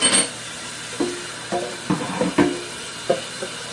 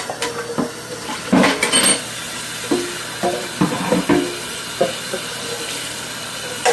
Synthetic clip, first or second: second